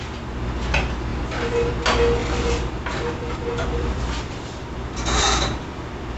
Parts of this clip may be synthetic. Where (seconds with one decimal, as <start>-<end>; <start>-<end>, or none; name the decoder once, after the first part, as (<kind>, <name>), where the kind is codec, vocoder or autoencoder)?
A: 2.2-6.2 (vocoder, BigVGAN v2)